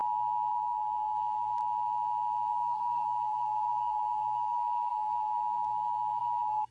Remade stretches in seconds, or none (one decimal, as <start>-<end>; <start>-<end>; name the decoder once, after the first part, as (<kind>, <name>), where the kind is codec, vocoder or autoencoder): 0.5-1.6 (codec, SNAC); 2.5-6.7